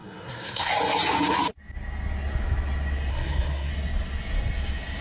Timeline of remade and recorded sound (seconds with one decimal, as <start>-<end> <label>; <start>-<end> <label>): 0.0-0.7 remade; 0.7-3.1 recorded; 3.1-3.7 remade; 3.7-5.0 recorded